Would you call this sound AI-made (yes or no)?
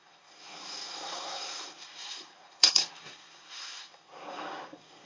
yes